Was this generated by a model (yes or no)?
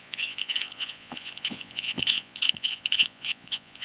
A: yes